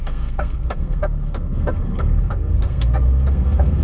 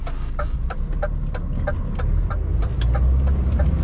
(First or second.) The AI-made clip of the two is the first